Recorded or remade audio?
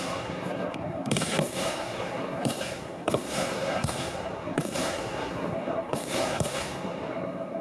remade